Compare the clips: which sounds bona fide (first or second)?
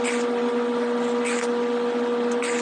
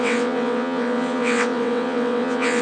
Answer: first